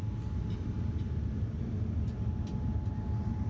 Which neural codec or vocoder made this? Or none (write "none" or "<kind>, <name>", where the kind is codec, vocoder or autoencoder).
none